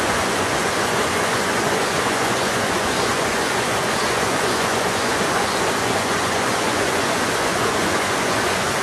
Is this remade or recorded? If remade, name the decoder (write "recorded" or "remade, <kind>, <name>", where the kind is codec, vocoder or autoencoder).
remade, vocoder, Vocos